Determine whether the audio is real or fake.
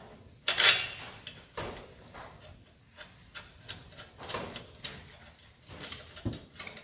real